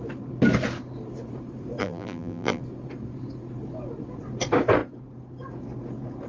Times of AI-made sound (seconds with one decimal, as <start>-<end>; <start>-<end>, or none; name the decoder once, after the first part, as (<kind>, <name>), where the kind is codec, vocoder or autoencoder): 1.8-2.6 (vocoder, BigVGAN v2)